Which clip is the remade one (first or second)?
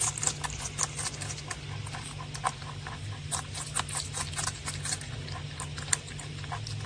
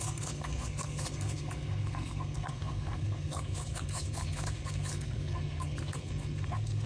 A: second